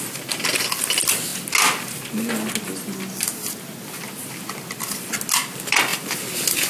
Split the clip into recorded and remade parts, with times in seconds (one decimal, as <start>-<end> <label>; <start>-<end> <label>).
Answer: 0.0-6.7 recorded